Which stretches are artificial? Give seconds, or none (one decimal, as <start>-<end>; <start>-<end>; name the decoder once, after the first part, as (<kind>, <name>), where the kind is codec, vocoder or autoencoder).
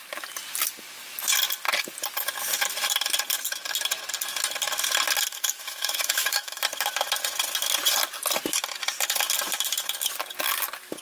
5.3-6.6 (autoencoder, DAC-VAE)